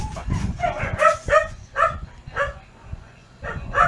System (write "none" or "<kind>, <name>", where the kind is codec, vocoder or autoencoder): vocoder, Vocos